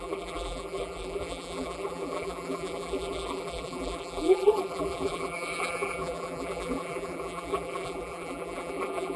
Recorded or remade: remade